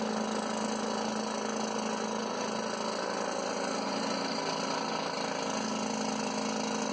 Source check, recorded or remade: recorded